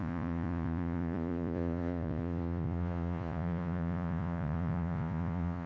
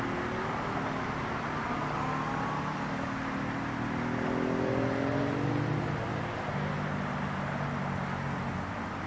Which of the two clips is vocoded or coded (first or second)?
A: first